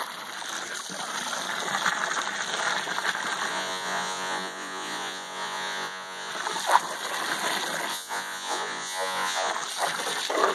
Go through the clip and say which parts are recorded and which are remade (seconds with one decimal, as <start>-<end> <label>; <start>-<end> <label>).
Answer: 0.0-3.5 recorded; 3.5-6.3 remade; 6.3-7.9 recorded; 7.9-9.5 remade; 9.5-10.5 recorded